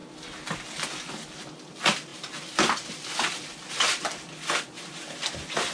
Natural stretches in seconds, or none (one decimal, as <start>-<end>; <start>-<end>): 0.0-2.1; 5.1-5.7